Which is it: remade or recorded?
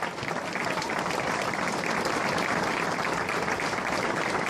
remade